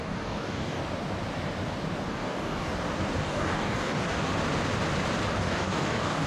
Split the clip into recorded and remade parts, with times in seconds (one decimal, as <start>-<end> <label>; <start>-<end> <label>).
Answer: 0.0-0.8 remade; 0.8-2.1 recorded; 2.1-2.7 remade; 2.7-3.2 recorded; 3.2-4.3 remade; 4.3-5.4 recorded; 5.4-6.3 remade